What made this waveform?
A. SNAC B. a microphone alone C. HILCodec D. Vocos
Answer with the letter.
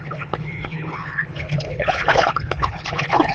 C